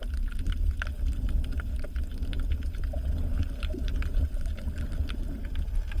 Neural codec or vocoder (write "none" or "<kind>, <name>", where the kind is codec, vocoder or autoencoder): none